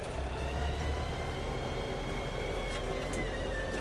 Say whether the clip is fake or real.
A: real